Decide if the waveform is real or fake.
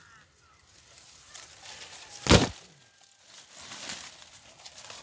real